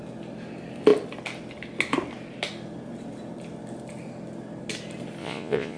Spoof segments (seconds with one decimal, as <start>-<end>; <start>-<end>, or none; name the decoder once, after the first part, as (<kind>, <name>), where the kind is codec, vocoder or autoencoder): 5.2-5.8 (vocoder, Vocos)